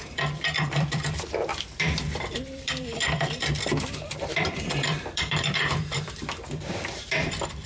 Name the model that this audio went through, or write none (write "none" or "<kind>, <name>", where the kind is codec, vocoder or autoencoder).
vocoder, BigVGAN v2